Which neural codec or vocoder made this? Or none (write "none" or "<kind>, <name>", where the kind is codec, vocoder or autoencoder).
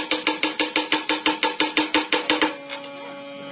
none